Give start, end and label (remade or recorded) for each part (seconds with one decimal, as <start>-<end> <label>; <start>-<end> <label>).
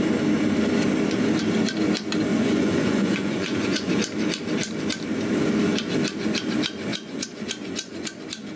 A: 0.0-2.3 recorded; 2.3-3.9 remade; 3.9-6.9 recorded; 6.9-8.2 remade; 8.2-8.6 recorded